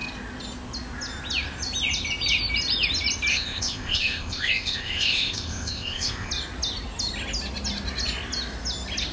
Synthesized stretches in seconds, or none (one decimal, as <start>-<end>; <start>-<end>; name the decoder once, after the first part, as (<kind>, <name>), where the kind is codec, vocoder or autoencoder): 3.3-6.3 (codec, ZipCodec)